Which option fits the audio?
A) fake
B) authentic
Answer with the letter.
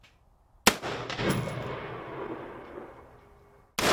B